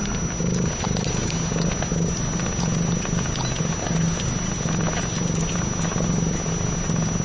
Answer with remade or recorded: recorded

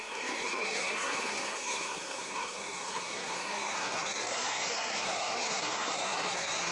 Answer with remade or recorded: remade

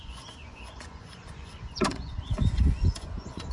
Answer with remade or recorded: remade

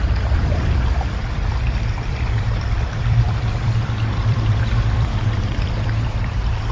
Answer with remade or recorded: remade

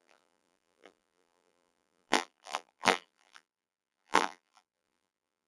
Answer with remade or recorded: remade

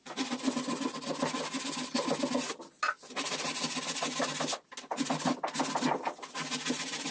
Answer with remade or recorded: recorded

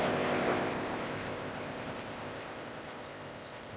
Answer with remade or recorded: remade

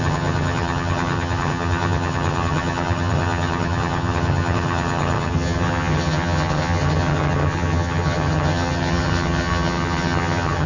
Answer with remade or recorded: remade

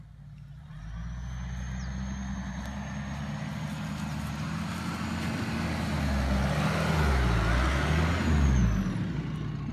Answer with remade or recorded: recorded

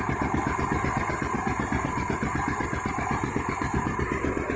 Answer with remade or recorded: recorded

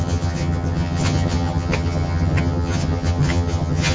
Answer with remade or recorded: remade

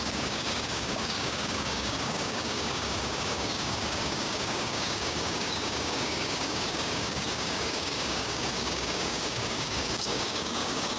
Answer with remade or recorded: remade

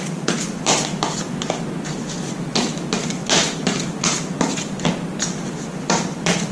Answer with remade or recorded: recorded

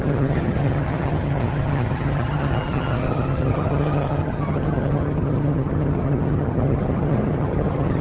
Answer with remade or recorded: remade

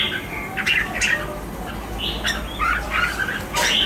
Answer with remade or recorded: recorded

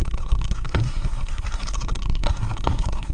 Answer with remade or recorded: remade